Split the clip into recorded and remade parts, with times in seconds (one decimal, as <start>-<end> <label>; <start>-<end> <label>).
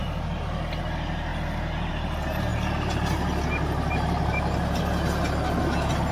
0.0-6.1 recorded